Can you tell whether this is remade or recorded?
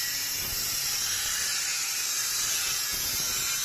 remade